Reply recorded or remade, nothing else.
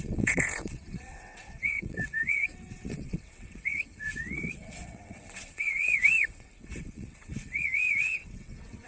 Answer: remade